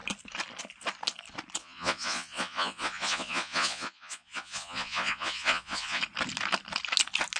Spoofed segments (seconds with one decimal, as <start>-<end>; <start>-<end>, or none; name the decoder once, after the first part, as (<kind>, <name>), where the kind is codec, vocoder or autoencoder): 1.6-6.0 (vocoder, Vocos)